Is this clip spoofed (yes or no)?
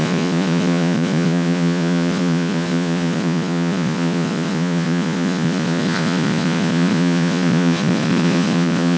yes